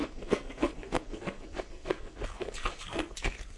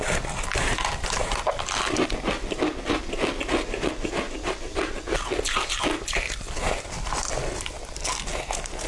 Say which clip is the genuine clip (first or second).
second